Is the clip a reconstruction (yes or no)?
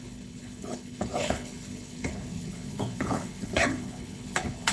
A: yes